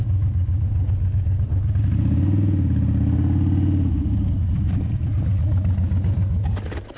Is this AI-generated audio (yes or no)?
no